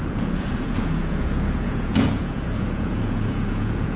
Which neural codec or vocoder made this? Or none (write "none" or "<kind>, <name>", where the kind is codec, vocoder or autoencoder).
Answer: vocoder, Vocos